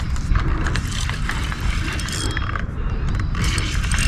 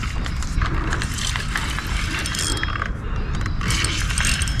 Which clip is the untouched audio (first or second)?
second